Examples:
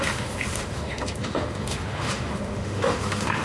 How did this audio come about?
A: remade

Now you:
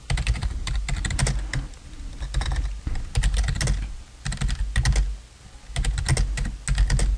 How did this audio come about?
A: recorded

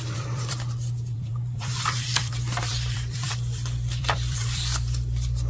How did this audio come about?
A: remade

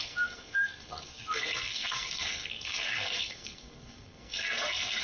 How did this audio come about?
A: remade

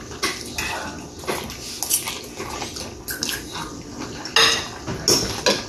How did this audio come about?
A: recorded